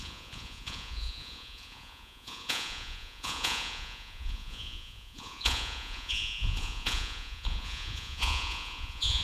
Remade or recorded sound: remade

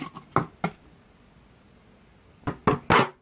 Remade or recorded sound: recorded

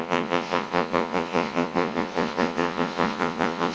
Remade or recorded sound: remade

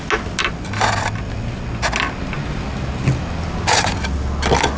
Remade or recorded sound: recorded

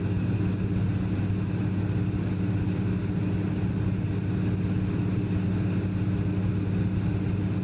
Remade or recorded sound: recorded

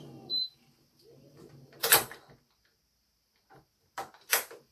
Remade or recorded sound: remade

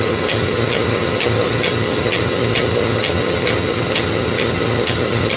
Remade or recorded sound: remade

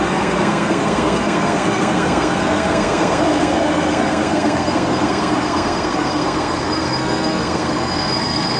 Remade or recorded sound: remade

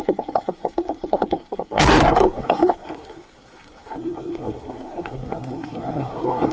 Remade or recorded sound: remade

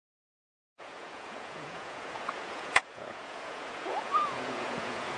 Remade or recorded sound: remade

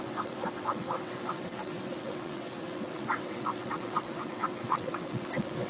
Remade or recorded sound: remade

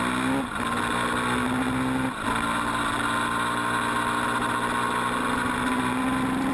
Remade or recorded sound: recorded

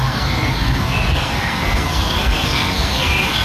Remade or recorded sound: remade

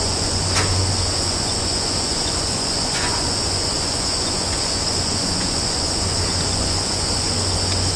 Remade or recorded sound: remade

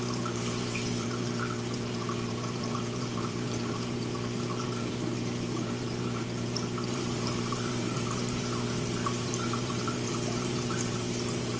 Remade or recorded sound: remade